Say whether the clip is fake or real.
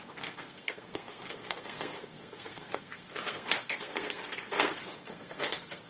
fake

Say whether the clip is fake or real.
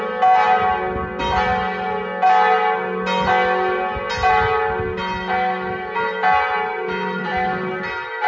real